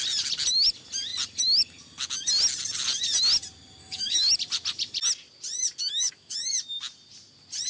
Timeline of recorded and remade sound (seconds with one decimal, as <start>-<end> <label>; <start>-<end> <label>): 0.0-3.8 recorded; 3.8-4.3 remade; 4.3-5.8 recorded; 5.8-6.5 remade; 6.5-7.7 recorded

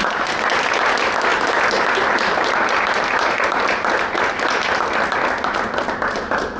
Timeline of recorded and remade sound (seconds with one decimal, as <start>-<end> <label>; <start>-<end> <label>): 0.0-6.6 recorded

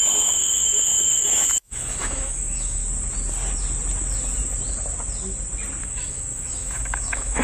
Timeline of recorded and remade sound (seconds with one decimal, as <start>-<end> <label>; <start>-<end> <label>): 0.0-2.8 remade; 2.8-5.8 recorded; 5.8-7.4 remade

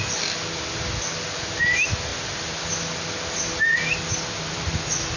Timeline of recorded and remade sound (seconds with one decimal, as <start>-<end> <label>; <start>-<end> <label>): 0.0-5.2 recorded

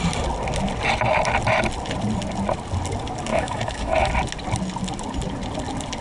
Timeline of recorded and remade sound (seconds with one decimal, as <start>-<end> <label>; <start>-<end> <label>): 0.0-3.3 recorded; 3.3-4.1 remade; 4.1-6.0 recorded

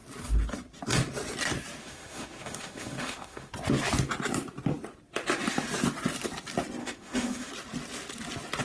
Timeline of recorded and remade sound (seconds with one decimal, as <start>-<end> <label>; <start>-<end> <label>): 0.0-1.8 recorded; 1.8-3.5 remade; 3.5-6.8 recorded; 6.8-7.5 remade; 7.5-8.6 recorded

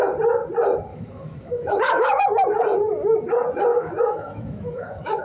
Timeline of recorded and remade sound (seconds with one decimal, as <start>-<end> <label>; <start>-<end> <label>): 0.0-0.9 recorded; 0.9-2.2 remade; 2.2-3.7 recorded; 3.7-5.2 remade